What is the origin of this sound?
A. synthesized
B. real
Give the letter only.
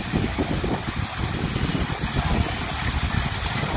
B